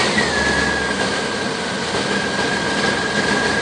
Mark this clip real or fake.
real